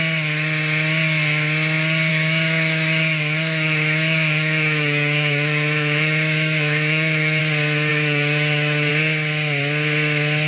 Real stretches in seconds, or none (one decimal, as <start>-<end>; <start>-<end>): 0.0-2.1; 7.4-7.9; 8.9-10.5